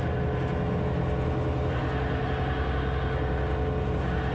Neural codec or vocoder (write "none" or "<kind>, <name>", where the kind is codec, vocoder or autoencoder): none